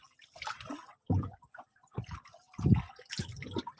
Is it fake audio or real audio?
real